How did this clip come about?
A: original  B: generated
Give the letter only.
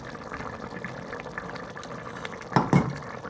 A